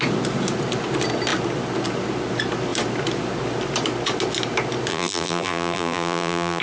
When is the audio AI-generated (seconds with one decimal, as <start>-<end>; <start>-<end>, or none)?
4.9-6.6